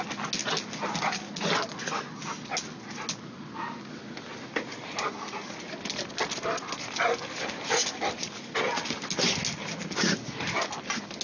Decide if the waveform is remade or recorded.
recorded